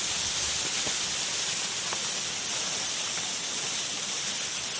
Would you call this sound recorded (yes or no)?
yes